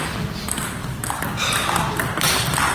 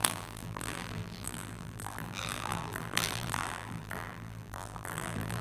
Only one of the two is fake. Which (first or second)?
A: second